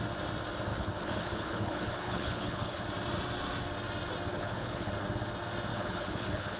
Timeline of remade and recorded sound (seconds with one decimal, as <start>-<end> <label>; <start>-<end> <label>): 0.0-0.7 recorded; 0.7-2.8 remade; 2.8-4.3 recorded; 4.3-4.9 remade; 4.9-5.7 recorded; 5.7-6.6 remade